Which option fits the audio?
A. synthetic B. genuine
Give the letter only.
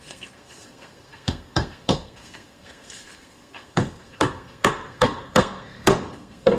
A